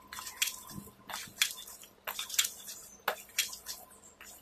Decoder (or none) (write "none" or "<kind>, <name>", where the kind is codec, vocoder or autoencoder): none